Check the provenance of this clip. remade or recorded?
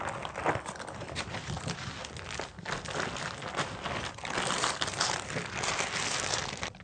recorded